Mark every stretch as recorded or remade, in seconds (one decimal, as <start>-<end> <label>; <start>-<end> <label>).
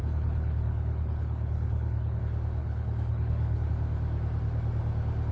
0.0-2.2 remade; 2.2-2.6 recorded; 2.6-3.7 remade; 3.7-5.3 recorded